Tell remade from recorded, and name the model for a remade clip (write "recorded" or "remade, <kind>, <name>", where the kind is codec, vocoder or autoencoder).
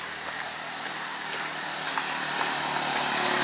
recorded